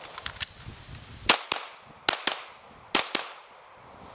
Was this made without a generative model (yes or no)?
yes